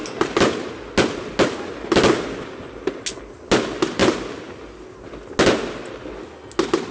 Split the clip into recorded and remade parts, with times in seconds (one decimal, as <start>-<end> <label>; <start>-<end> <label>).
0.0-6.9 recorded